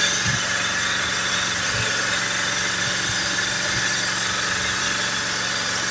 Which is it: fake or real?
real